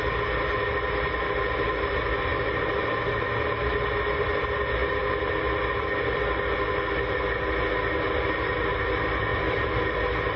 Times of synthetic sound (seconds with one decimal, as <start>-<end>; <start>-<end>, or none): none